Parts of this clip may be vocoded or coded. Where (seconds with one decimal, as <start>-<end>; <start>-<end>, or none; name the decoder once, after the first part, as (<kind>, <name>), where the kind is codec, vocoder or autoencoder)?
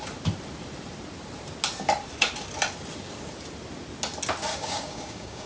4.5-5.5 (codec, DAC)